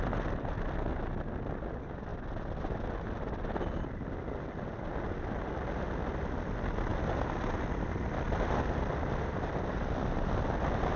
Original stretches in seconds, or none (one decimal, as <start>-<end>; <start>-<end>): 0.0-11.0